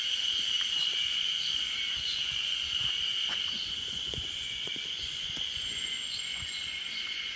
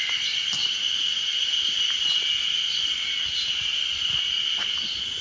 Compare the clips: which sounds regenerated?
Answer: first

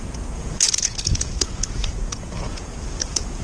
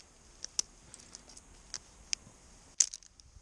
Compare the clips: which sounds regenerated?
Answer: first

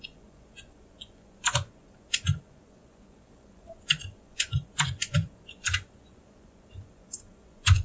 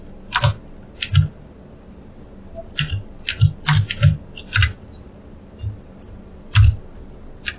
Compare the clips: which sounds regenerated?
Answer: first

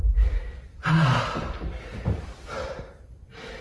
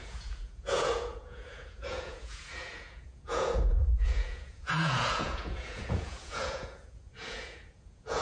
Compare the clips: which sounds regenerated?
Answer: second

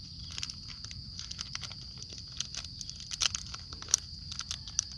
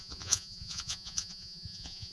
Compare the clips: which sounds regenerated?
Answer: second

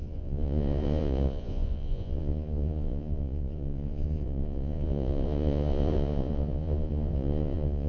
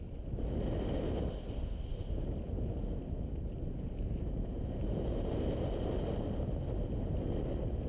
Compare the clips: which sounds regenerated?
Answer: first